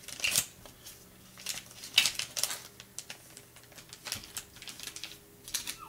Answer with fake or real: real